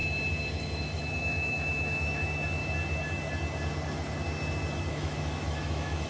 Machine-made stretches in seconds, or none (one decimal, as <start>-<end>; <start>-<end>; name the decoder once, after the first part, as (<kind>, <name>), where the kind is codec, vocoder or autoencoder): 0.6-2.6 (autoencoder, DAC-VAE); 4.9-6.1